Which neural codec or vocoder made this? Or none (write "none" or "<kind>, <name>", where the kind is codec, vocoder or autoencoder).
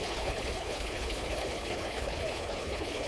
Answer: codec, HILCodec